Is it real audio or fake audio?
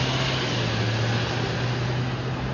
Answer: real